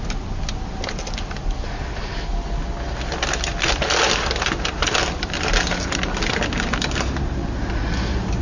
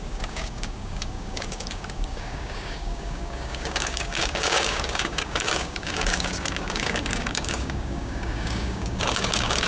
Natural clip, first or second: first